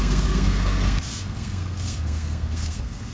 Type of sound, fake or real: fake